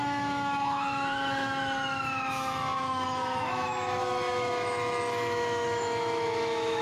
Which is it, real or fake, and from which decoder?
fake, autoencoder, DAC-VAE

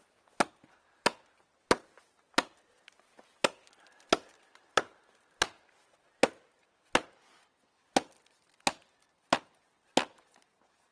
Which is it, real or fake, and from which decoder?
real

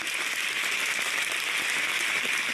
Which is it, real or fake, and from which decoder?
real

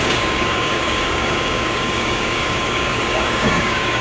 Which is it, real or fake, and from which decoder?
fake, codec, DAC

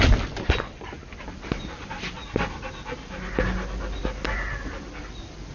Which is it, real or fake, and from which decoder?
fake, vocoder, BigVGAN v2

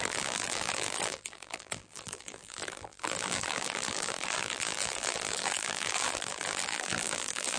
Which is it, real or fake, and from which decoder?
fake, vocoder, BigVGAN v2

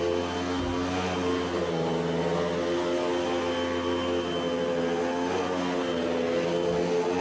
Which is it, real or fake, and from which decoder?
real